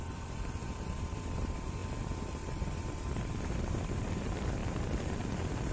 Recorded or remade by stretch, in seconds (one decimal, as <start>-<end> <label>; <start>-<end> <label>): 0.0-5.7 remade